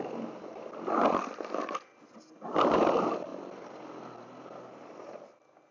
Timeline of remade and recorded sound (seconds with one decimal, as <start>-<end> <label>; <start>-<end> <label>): 0.0-5.7 recorded